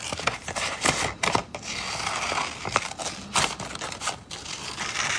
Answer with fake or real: real